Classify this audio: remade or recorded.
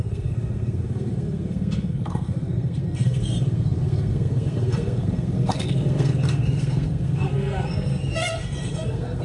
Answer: remade